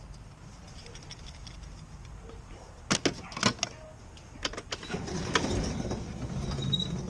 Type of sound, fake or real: real